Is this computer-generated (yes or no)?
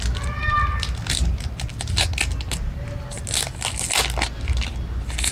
no